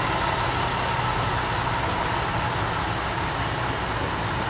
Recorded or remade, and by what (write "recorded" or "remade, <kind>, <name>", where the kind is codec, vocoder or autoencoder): recorded